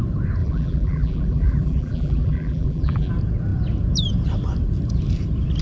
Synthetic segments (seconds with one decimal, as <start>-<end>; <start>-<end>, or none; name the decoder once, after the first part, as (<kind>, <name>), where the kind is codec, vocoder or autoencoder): 0.4-3.1 (vocoder, BigVGAN v2)